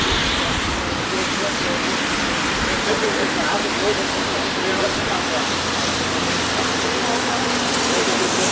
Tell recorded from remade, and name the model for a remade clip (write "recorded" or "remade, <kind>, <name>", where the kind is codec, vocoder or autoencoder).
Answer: remade, vocoder, BigVGAN v2